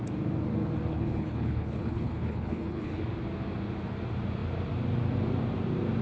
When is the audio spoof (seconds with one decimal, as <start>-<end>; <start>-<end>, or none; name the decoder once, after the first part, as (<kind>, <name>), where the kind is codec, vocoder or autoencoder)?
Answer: 0.9-3.0 (codec, HILCodec)